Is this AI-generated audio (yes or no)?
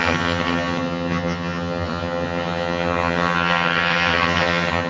yes